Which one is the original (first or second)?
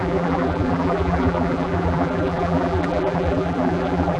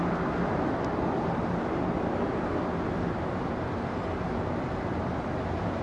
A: second